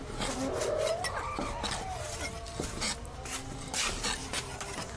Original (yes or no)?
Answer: yes